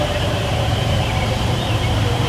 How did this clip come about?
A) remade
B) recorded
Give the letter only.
A